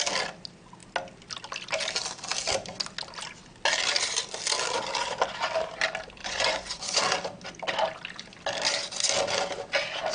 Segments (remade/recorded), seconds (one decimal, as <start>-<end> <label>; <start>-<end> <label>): 0.0-6.2 recorded; 6.2-7.0 remade; 7.0-10.1 recorded